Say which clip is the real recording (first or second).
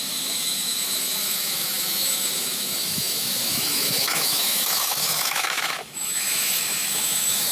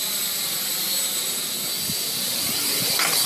second